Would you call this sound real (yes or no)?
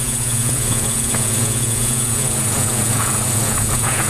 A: no